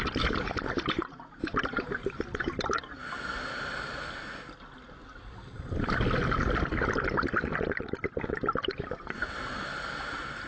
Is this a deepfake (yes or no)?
no